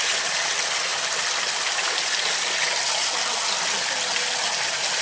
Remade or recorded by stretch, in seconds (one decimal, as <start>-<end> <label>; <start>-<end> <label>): 0.0-5.0 recorded